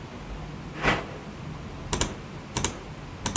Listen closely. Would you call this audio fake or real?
real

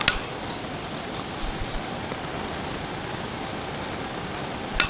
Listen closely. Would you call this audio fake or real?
fake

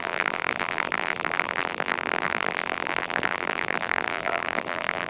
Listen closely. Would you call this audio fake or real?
fake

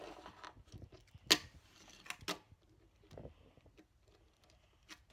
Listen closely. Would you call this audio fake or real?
real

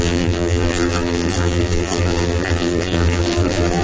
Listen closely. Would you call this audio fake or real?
fake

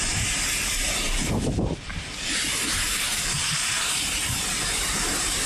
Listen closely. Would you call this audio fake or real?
fake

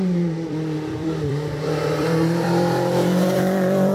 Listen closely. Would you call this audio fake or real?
fake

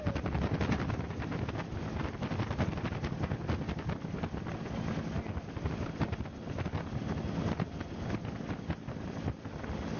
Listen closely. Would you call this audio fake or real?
real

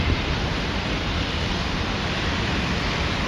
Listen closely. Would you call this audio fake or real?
fake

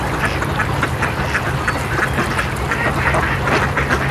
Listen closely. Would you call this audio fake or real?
real